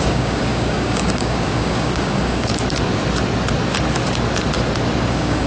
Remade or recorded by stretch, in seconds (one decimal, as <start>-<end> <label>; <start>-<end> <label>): 0.0-2.5 remade; 2.5-5.1 recorded; 5.1-5.5 remade